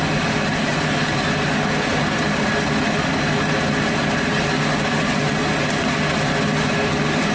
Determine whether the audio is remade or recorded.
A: recorded